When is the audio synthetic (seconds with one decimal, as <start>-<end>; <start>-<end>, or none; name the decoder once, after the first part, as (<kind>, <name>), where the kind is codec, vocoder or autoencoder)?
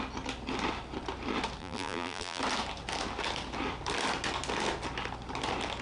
1.6-2.4 (vocoder, BigVGAN v2)